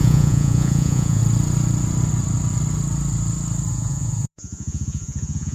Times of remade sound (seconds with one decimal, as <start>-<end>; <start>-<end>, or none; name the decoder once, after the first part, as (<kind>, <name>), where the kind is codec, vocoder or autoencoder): 0.0-1.2 (vocoder, Vocos); 3.7-5.5